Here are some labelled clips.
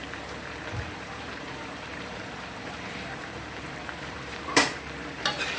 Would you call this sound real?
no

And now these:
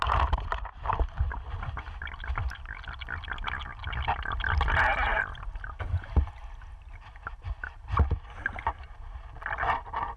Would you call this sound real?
yes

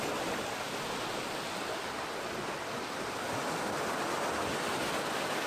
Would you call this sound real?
yes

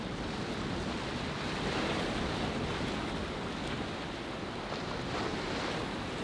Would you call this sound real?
yes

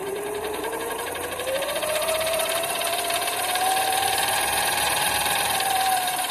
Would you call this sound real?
no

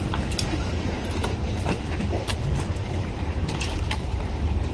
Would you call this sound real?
no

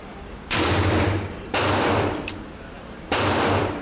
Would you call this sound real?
no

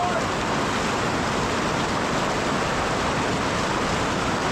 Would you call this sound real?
yes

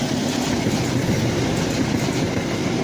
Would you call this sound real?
yes